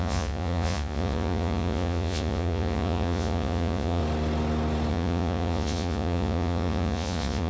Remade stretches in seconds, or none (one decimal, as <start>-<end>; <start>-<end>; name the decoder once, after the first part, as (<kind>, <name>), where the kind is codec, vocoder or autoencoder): 0.0-4.0 (vocoder, Vocos); 4.9-7.5